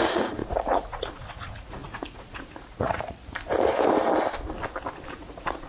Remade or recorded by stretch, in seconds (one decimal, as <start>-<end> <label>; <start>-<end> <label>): 0.0-3.2 remade; 3.2-5.1 recorded; 5.1-5.7 remade